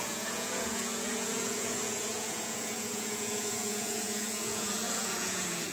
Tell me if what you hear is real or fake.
fake